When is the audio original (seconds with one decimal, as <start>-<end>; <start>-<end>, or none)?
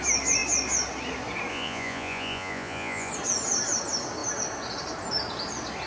0.0-1.5; 3.1-5.9